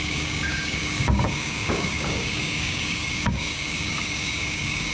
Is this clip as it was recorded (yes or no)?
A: no